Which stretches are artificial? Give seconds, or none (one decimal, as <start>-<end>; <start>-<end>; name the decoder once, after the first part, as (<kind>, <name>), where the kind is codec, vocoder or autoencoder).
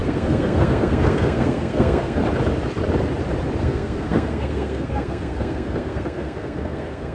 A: 0.0-2.2 (codec, SNAC); 3.6-7.1